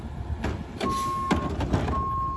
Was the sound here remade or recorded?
recorded